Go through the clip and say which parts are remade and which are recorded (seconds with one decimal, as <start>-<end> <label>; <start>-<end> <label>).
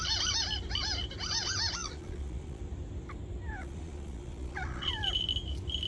0.0-1.8 recorded; 1.8-2.6 remade; 2.6-3.6 recorded; 3.6-4.9 remade; 4.9-5.9 recorded